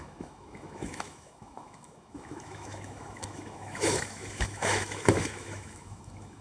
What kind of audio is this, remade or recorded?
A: remade